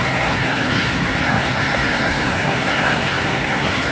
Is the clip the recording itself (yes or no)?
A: no